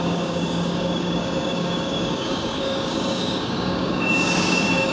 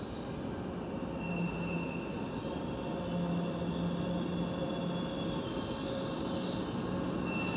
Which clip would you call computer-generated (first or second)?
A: first